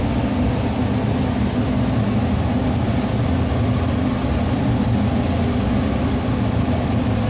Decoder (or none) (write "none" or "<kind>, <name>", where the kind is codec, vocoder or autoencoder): none